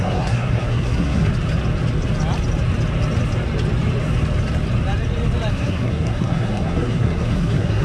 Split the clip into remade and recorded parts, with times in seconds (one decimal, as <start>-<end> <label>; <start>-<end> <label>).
0.0-1.3 remade; 1.3-5.5 recorded; 5.5-7.8 remade